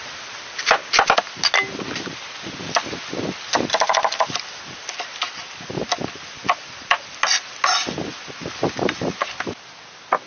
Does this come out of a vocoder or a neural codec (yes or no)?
no